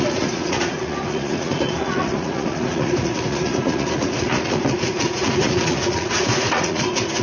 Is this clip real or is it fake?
fake